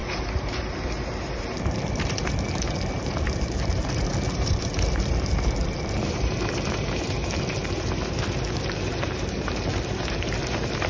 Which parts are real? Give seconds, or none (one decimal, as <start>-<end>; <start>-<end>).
none